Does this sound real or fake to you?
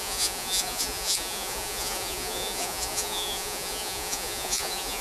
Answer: fake